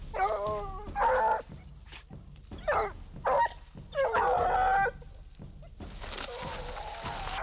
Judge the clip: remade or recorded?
recorded